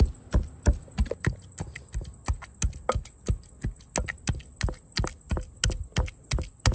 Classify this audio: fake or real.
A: real